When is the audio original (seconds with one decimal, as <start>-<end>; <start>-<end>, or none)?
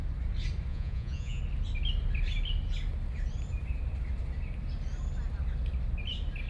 0.0-0.7; 1.4-6.5